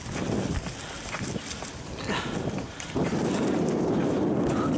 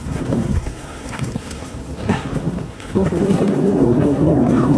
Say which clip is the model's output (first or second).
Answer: second